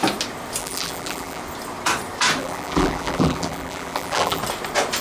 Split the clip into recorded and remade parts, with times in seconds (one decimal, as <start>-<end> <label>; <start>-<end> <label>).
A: 0.0-0.6 recorded; 0.6-1.4 remade; 1.4-2.4 recorded; 2.4-4.4 remade; 4.4-5.0 recorded